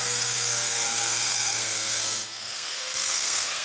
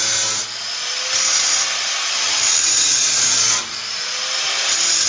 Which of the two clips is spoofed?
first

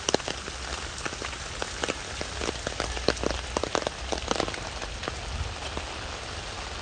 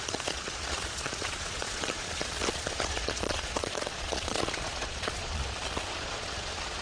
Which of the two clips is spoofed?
second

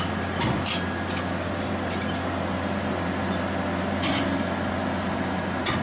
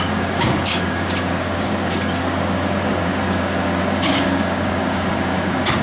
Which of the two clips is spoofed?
second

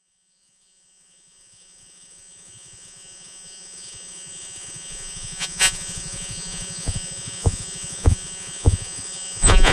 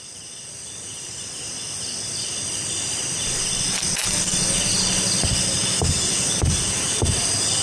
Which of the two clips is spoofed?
first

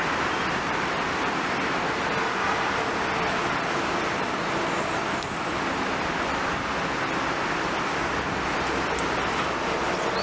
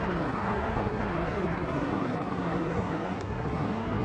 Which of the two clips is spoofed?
second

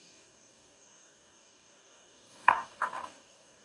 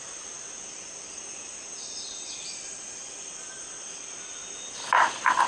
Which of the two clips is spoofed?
first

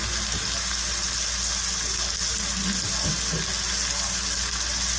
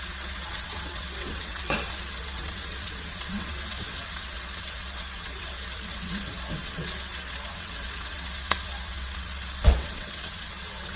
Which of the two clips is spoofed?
second